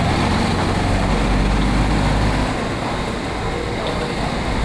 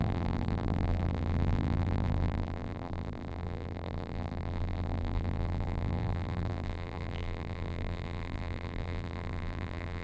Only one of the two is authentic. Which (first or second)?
first